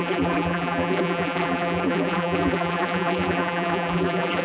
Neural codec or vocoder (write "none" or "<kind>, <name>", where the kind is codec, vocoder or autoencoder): vocoder, BigVGAN v2